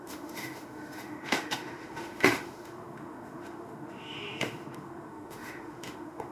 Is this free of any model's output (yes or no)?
no